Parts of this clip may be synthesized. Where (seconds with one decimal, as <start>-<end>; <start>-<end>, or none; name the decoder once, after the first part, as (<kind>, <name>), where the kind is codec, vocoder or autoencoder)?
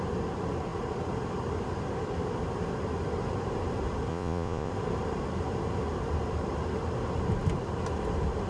4.1-4.7 (vocoder, Vocos)